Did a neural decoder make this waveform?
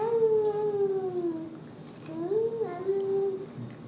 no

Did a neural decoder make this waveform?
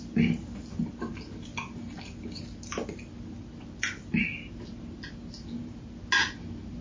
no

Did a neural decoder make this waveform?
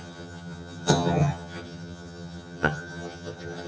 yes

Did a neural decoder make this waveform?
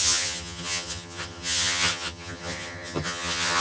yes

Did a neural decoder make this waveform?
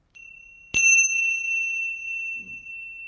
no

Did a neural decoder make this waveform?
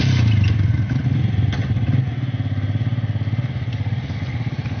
no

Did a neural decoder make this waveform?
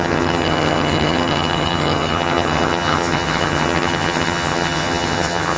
yes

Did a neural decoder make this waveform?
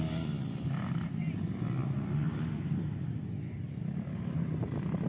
no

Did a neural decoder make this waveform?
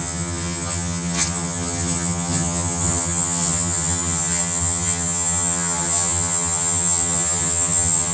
yes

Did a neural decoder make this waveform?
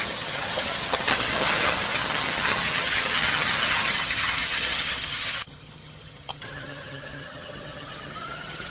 yes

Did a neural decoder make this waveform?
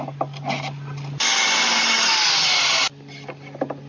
no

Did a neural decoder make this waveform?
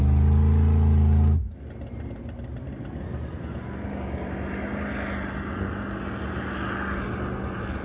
no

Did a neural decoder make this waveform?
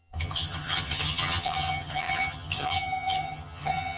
yes